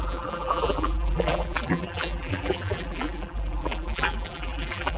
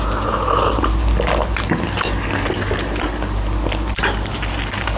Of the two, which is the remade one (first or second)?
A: first